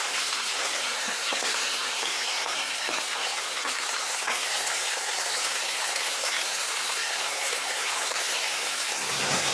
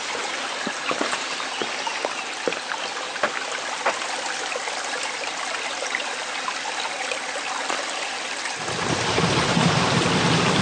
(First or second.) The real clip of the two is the second